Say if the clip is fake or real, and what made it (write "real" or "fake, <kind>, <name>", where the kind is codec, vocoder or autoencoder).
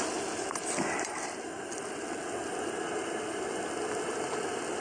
real